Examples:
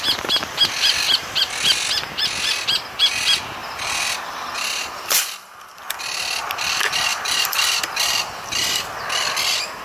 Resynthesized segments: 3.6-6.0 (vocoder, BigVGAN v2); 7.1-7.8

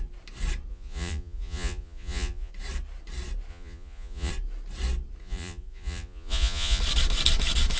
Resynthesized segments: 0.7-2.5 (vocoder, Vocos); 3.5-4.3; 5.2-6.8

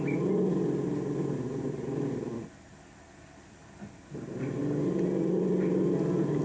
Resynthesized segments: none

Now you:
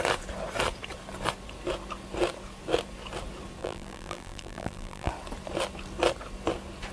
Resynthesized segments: 3.6-5.1 (vocoder, BigVGAN v2)